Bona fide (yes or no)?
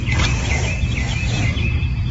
yes